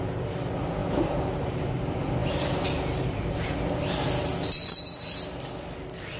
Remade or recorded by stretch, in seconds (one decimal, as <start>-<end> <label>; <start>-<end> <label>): 0.0-0.8 recorded; 0.8-1.7 remade; 1.7-6.2 recorded